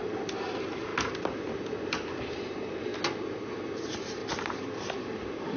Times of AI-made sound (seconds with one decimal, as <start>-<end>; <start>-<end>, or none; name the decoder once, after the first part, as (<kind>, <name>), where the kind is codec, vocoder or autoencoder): 0.0-0.9 (vocoder, BigVGAN v2); 1.6-2.9; 3.8-5.6